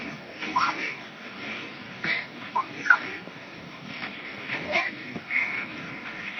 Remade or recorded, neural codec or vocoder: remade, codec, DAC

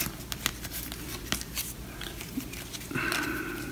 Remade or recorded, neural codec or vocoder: recorded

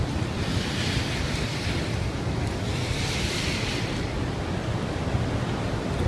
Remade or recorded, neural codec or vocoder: recorded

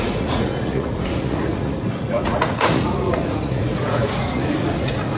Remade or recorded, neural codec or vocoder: remade, vocoder, Vocos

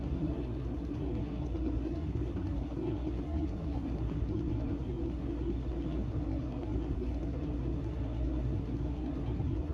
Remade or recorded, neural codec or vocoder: remade, codec, SNAC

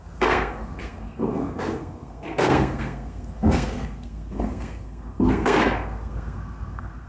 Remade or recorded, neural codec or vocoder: remade, codec, SNAC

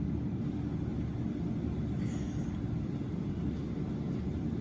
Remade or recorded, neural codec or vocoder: recorded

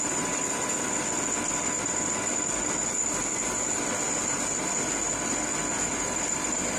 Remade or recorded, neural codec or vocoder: recorded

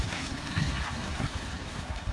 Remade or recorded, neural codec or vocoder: remade, codec, SNAC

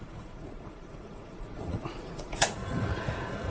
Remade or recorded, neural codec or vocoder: remade, vocoder, Vocos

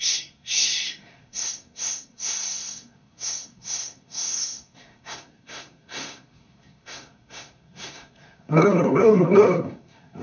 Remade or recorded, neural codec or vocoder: remade, codec, SNAC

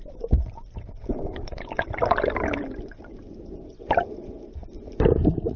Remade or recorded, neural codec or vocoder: recorded